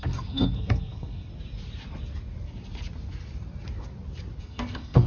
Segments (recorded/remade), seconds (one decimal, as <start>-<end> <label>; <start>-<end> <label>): 0.0-1.3 remade; 1.3-4.4 recorded; 4.4-5.1 remade